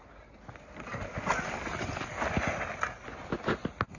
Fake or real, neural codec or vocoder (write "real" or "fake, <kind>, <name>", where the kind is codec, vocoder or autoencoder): real